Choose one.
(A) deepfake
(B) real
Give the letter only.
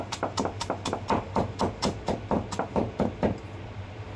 B